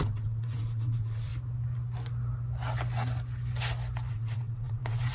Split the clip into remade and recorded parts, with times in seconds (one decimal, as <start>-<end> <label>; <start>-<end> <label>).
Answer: 0.0-1.3 remade; 1.3-4.1 recorded; 4.1-5.1 remade